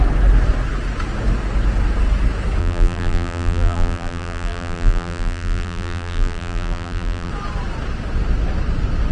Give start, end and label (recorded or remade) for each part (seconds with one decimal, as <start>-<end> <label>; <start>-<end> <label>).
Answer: 0.0-2.6 recorded; 2.6-7.3 remade; 7.3-9.1 recorded